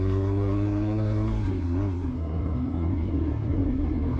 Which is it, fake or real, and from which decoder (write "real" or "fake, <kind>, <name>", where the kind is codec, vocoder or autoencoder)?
fake, codec, SNAC